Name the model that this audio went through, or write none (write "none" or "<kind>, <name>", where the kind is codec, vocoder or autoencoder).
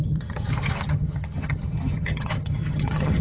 vocoder, HiFi-GAN